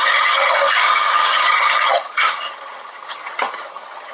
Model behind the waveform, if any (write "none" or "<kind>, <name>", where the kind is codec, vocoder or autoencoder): vocoder, HiFi-GAN